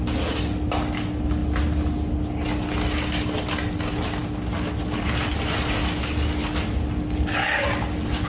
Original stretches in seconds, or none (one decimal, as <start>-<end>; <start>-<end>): 0.0-8.3